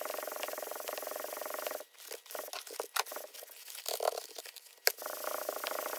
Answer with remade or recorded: recorded